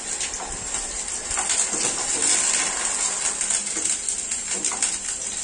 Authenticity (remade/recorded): recorded